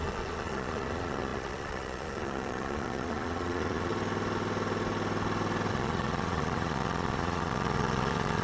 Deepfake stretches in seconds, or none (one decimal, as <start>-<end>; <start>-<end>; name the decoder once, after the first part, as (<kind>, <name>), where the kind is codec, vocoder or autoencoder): 0.0-3.9 (vocoder, Vocos); 5.7-8.4